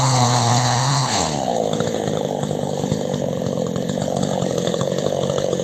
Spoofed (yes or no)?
yes